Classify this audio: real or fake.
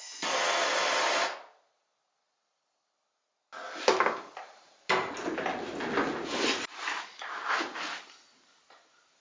real